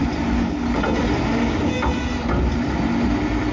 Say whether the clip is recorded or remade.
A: recorded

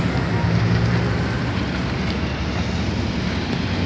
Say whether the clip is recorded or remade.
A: recorded